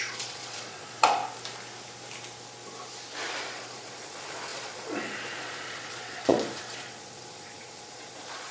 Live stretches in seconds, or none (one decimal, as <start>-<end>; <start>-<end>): 1.2-3.4